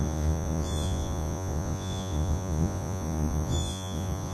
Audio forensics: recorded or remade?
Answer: remade